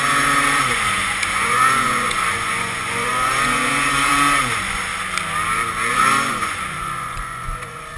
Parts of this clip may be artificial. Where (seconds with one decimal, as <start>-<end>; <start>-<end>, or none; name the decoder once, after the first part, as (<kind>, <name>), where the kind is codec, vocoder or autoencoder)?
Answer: 0.0-4.9 (vocoder, Vocos); 5.9-8.0